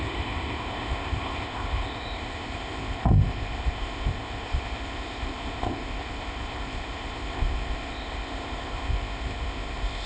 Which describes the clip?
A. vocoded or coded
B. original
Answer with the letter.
A